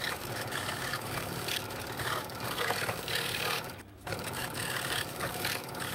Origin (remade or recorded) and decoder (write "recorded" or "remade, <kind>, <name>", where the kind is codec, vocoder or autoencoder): remade, codec, DAC